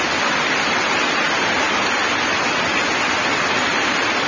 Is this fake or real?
real